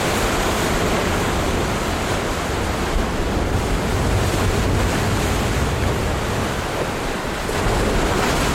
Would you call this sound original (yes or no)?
yes